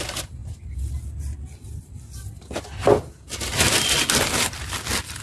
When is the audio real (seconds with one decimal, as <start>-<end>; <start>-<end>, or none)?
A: 0.0-5.2